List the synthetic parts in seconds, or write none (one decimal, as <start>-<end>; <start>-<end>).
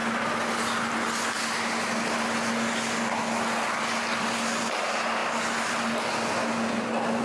none